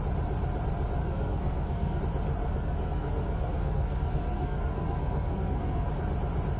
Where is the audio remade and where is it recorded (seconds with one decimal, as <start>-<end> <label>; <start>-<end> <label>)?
0.0-1.0 recorded; 1.0-2.0 remade; 2.0-2.4 recorded; 2.4-5.9 remade; 5.9-6.6 recorded